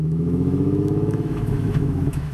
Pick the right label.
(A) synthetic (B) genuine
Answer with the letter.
A